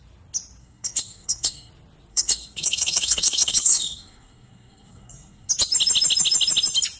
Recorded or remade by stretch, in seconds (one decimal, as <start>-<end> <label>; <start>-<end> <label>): 0.0-0.6 recorded; 0.6-1.7 remade; 1.7-2.1 recorded; 2.1-5.5 remade; 5.5-7.0 recorded